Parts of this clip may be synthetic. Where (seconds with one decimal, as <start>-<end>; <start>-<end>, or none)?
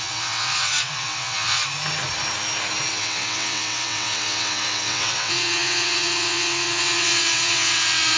0.0-1.6; 2.9-8.2